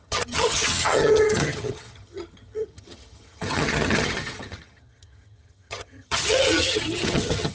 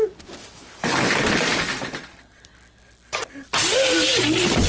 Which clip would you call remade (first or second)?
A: first